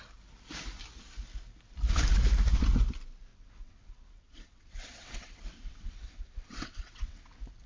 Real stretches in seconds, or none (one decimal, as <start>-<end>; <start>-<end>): 0.0-3.3; 7.3-7.7